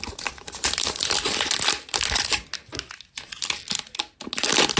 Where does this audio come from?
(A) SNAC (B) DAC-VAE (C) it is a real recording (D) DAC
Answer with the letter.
C